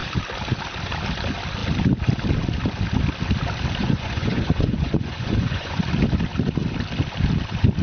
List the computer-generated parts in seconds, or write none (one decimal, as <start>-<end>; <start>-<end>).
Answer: 3.8-5.8